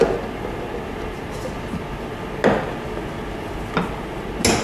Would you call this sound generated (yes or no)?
no